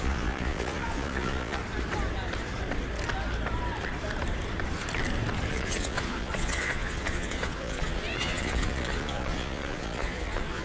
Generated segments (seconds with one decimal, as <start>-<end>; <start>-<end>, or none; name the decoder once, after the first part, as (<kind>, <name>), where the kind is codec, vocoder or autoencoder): 0.0-1.6 (vocoder, Vocos); 5.5-10.6